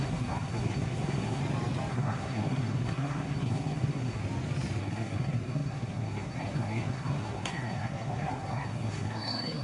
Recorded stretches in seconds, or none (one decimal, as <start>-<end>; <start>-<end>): 1.4-1.9; 4.2-4.8